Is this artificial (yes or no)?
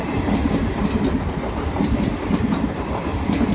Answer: no